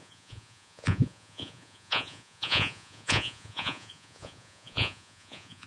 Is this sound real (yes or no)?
no